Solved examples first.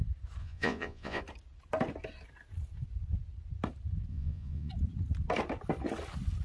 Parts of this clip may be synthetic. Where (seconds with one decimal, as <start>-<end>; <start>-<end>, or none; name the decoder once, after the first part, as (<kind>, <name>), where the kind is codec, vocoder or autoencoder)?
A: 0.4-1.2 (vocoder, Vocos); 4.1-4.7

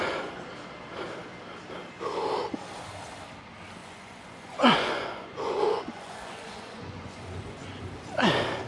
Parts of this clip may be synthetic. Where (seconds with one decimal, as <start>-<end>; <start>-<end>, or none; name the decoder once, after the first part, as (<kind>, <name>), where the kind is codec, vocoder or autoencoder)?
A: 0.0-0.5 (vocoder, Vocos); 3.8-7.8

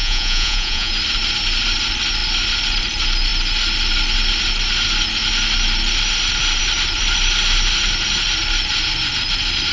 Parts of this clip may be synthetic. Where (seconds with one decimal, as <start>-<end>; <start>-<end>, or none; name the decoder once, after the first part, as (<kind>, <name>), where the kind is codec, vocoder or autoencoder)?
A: 0.0-0.9 (vocoder, Vocos)

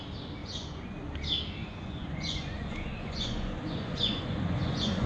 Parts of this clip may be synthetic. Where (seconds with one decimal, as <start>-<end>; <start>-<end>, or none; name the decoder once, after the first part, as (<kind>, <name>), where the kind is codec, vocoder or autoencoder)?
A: 0.4-0.9 (vocoder, Vocos); 1.6-5.1

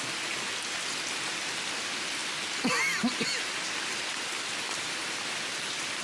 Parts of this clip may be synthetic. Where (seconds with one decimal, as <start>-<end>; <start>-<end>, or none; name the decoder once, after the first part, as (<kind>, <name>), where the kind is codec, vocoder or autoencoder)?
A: none

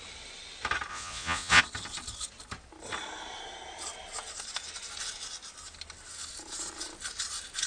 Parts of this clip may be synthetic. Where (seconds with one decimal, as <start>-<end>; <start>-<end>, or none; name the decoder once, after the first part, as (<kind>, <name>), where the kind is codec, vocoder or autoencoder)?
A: 0.9-1.6 (vocoder, Vocos)

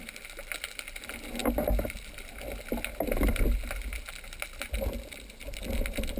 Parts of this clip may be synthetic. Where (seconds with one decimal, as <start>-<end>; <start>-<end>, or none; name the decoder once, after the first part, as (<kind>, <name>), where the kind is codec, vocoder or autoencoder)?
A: none

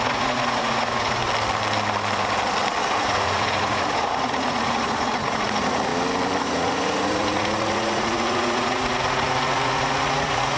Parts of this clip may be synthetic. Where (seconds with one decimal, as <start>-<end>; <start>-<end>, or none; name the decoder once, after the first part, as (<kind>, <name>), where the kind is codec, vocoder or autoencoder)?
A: 0.0-1.2 (vocoder, Vocos); 2.9-5.9; 6.4-10.6